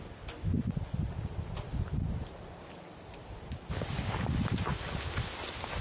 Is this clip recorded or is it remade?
recorded